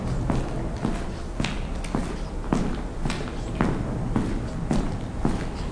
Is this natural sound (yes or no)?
yes